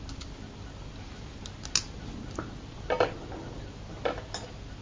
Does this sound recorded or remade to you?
recorded